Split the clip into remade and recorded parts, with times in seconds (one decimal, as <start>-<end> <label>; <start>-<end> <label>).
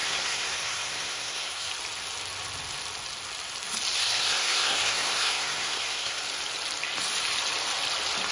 0.0-1.7 remade; 1.7-4.0 recorded; 4.0-6.2 remade; 6.2-8.3 recorded